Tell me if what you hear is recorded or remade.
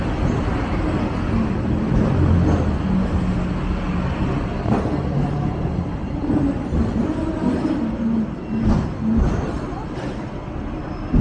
recorded